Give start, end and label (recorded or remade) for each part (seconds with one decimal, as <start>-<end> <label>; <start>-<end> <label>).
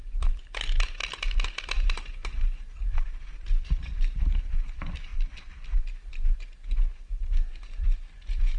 0.0-1.0 remade; 1.0-1.6 recorded; 1.6-5.1 remade; 5.1-5.8 recorded; 5.8-8.6 remade